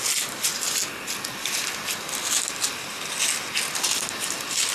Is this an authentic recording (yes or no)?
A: yes